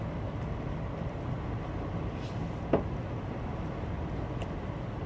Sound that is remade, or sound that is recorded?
recorded